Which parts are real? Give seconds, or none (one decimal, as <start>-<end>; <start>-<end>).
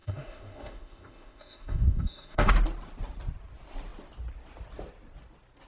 2.5-5.7